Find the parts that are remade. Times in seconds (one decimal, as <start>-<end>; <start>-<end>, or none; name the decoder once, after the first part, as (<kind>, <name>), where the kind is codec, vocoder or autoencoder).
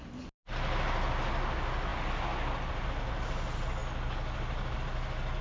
none